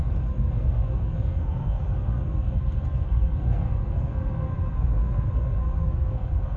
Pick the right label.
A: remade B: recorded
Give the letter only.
A